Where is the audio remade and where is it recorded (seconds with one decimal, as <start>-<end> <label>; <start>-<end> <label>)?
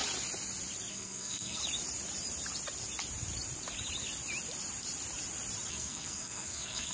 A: 0.0-0.9 recorded; 0.9-1.6 remade; 1.6-5.7 recorded; 5.7-6.9 remade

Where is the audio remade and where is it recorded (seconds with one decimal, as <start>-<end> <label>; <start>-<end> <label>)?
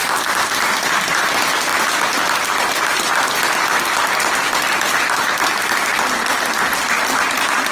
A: 0.0-7.7 recorded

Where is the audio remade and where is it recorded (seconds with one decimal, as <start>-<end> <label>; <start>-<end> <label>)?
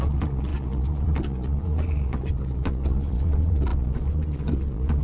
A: 0.0-5.0 remade